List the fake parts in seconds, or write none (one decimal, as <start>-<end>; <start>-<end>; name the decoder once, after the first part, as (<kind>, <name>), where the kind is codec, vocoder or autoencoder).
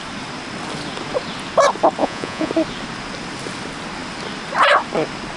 2.0-2.5 (vocoder, Vocos)